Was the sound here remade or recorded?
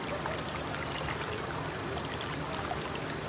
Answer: recorded